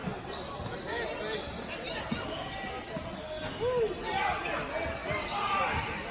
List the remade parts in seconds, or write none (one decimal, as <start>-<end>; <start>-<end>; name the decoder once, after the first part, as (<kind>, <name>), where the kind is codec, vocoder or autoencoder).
5.0-6.1 (vocoder, BigVGAN v2)